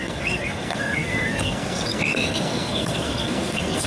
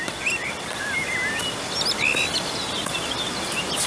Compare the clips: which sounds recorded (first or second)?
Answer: second